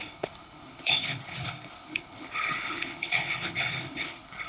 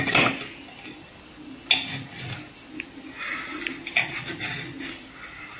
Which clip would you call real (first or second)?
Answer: second